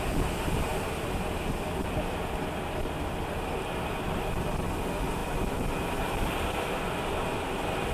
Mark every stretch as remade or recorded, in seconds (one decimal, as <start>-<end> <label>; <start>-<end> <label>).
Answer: 0.0-0.7 recorded; 0.7-1.9 remade; 1.9-7.9 recorded